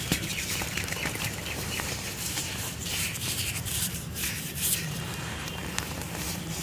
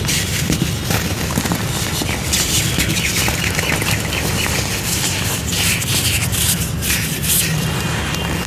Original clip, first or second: second